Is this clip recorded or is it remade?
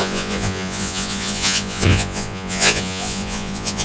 remade